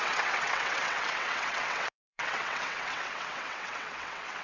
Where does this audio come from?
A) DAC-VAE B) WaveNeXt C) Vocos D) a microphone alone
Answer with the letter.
B